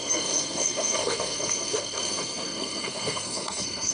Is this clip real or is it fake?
fake